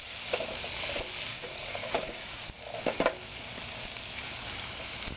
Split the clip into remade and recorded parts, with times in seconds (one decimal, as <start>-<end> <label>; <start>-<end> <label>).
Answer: 0.0-1.3 recorded; 1.3-2.5 remade; 2.5-5.2 recorded

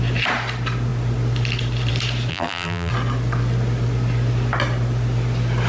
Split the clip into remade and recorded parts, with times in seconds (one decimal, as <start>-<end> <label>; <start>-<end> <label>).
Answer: 0.0-2.3 recorded; 2.3-2.9 remade; 2.9-5.7 recorded

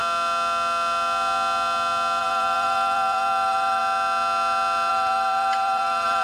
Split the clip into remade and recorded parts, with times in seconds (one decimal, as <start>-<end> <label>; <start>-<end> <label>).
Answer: 0.0-2.2 recorded; 2.2-3.8 remade; 3.8-4.9 recorded; 4.9-6.2 remade

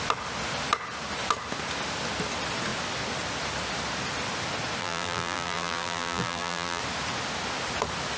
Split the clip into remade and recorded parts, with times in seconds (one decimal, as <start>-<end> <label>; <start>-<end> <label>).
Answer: 0.0-4.8 recorded; 4.8-6.8 remade; 6.8-8.2 recorded